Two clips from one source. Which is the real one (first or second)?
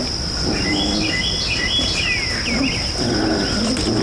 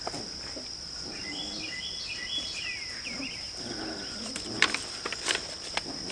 first